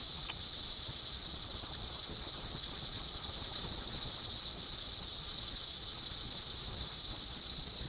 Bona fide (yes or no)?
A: no